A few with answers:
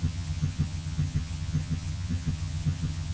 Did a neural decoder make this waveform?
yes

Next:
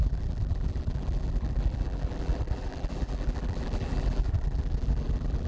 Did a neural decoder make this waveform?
yes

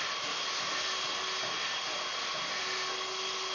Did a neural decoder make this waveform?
no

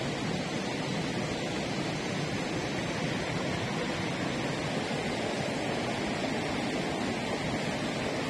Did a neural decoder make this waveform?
no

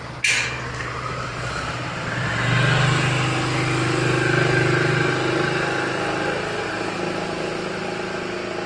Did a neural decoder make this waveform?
no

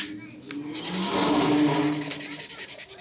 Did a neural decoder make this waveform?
no